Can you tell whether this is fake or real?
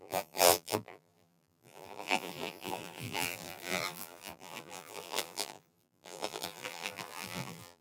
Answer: fake